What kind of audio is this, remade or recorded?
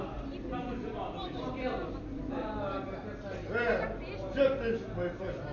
recorded